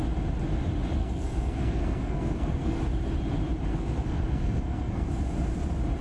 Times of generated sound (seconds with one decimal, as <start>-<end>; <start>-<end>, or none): 1.0-2.8; 3.7-5.1